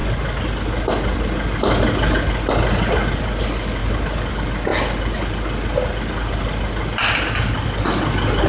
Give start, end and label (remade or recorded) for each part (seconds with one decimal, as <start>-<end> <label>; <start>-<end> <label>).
0.0-8.5 recorded